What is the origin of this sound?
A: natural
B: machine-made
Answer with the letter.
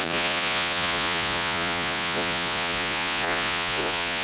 B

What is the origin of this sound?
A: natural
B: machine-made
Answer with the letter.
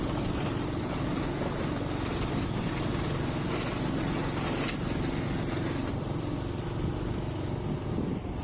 A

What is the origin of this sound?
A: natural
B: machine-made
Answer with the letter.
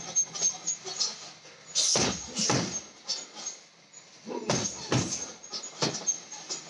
A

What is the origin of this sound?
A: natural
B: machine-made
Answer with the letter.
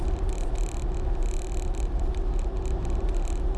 A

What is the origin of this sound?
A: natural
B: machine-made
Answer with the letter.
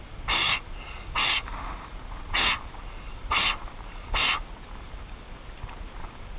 A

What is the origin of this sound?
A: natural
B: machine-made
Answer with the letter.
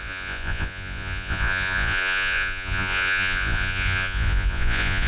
B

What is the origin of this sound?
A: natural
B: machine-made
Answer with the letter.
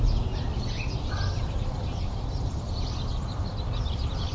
B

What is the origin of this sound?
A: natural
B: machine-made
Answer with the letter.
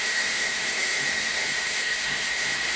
B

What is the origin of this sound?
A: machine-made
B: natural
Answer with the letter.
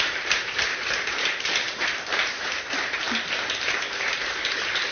A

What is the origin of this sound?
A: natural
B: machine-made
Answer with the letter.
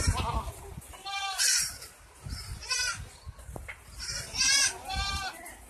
A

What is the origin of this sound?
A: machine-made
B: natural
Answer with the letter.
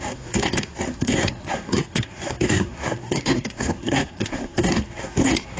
A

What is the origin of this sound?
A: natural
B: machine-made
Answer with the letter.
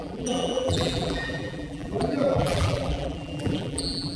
B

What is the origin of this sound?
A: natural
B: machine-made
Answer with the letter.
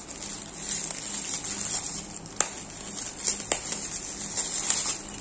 A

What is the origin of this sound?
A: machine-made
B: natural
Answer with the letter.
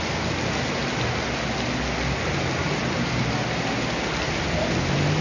B